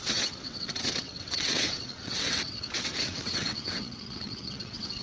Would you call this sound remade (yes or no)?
yes